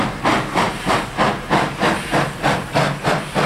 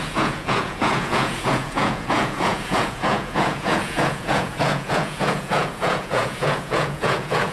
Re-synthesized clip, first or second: second